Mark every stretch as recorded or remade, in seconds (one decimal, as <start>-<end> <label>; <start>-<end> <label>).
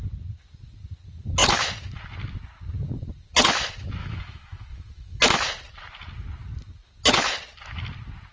0.0-4.0 recorded; 4.0-5.2 remade; 5.2-8.3 recorded